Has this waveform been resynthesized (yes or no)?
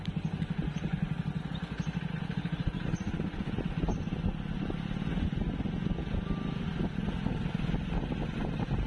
no